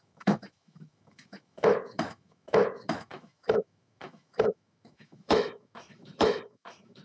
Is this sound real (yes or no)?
no